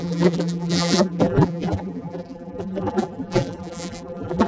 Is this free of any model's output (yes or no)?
no